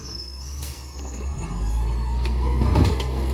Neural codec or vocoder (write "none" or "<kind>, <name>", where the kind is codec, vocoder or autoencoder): codec, SNAC